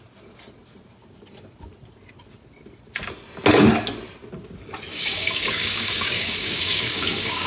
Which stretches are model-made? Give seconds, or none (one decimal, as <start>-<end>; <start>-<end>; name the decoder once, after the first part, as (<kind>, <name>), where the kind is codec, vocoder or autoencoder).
4.9-7.5 (codec, DAC)